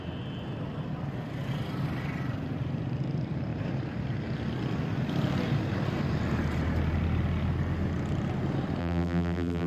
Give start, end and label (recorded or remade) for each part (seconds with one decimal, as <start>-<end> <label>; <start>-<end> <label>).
0.0-8.8 recorded; 8.8-9.7 remade